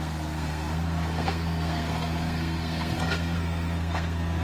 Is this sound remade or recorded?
remade